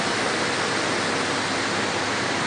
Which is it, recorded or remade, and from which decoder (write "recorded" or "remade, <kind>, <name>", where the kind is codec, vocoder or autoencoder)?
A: recorded